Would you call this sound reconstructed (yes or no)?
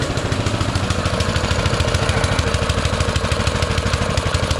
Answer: yes